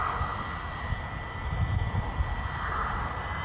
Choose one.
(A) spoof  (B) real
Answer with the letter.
B